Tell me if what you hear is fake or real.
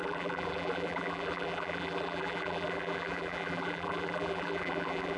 fake